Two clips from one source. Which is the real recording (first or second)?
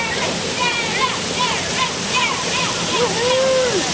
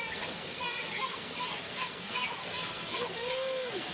first